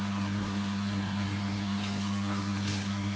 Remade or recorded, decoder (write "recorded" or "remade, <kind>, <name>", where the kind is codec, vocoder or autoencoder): remade, codec, SNAC